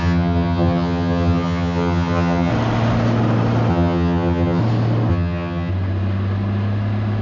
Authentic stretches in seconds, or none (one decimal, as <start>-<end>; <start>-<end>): 2.5-3.7; 4.6-5.1; 5.7-7.2